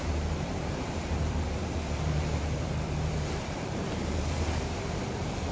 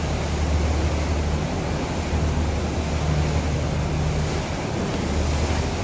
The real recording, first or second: second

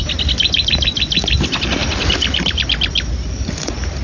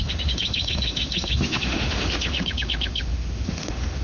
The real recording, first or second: first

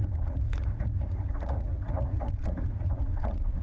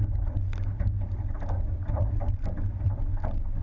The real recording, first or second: second